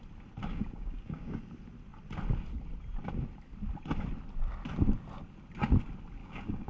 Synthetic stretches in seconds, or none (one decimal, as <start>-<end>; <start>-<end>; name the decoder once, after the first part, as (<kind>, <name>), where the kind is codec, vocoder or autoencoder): 0.4-1.4 (codec, DAC); 6.2-6.7

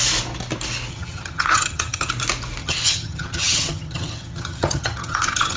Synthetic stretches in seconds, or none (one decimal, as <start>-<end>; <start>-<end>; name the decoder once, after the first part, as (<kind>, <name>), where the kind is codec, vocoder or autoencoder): 0.9-2.1 (vocoder, HiFi-GAN); 2.6-5.6

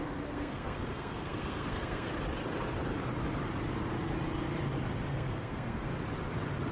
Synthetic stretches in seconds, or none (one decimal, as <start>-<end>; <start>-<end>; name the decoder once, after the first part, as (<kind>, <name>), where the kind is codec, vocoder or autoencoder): 0.0-2.1 (codec, SNAC); 5.1-5.9

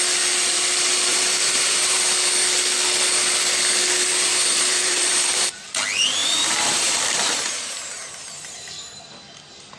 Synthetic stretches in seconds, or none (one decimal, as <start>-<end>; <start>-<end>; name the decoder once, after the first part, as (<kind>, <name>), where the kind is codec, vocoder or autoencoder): 1.1-2.0 (vocoder, BigVGAN v2); 4.5-5.6; 6.2-9.0

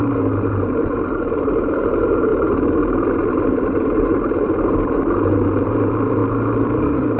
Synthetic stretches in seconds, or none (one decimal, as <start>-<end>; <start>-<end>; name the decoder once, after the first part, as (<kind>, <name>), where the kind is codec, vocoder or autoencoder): 0.0-6.2 (vocoder, BigVGAN v2)

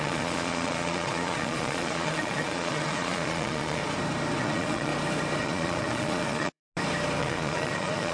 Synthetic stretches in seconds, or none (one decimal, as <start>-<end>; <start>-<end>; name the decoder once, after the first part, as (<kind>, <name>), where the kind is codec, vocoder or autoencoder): 0.0-3.8 (vocoder, Vocos); 4.4-4.9; 5.4-6.6; 7.2-8.1

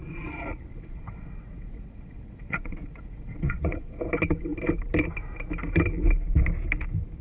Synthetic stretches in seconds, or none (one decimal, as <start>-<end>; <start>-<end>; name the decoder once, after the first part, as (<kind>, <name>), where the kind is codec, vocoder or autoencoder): 0.7-4.0 (vocoder, WaveNeXt)